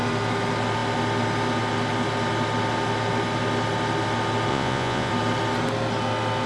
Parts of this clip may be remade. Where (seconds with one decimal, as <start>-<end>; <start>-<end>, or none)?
4.5-5.1